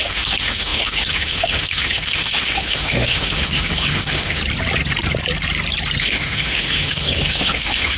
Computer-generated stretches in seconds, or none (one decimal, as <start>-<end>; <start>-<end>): 0.0-4.4; 6.0-8.0